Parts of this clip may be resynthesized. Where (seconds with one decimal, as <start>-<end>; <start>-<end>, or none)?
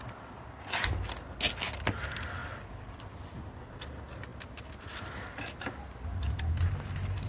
2.4-3.1